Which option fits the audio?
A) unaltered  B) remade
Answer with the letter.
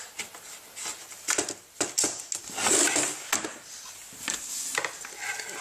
A